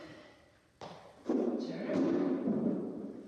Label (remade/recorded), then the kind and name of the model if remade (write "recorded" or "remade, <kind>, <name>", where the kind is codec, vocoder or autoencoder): recorded